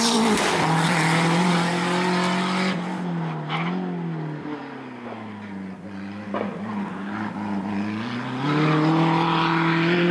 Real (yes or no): yes